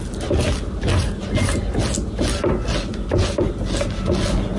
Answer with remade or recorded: recorded